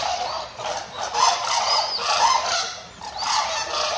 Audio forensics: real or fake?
real